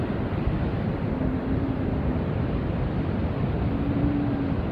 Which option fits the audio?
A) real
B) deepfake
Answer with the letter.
A